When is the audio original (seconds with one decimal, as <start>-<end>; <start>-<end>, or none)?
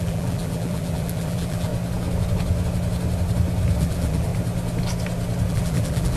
1.7-3.8; 4.3-5.5